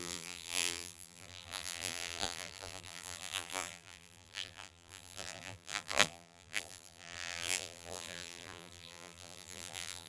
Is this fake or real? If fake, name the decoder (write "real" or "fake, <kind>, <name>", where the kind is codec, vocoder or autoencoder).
fake, vocoder, BigVGAN v2